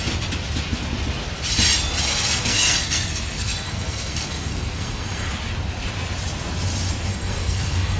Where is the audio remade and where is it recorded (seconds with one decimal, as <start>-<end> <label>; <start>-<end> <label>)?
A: 0.0-2.1 recorded; 2.1-5.3 remade; 5.3-7.1 recorded; 7.1-8.0 remade